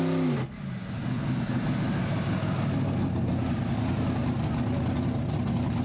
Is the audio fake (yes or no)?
no